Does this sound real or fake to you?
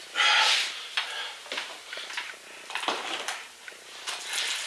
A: real